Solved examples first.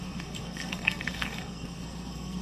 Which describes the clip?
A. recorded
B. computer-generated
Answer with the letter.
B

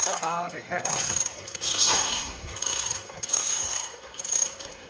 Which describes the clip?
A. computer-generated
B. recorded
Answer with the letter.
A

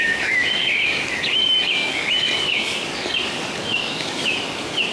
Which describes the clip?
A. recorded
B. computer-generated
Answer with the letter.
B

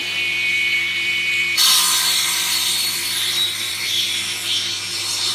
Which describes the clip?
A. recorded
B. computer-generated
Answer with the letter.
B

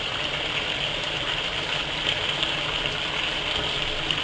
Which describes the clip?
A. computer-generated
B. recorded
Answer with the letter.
B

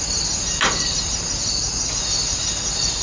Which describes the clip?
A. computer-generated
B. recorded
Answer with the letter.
B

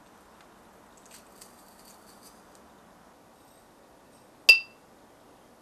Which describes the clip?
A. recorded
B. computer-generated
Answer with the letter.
A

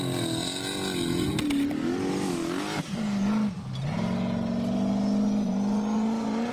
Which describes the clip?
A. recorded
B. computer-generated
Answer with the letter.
A